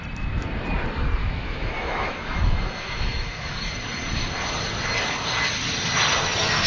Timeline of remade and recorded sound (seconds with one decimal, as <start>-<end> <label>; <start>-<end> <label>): 0.0-1.2 recorded; 1.2-3.7 remade; 3.7-6.7 recorded